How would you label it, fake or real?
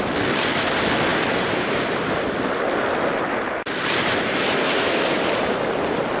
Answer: real